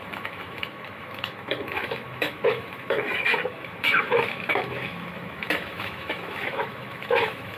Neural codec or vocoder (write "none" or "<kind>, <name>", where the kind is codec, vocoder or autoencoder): autoencoder, DAC-VAE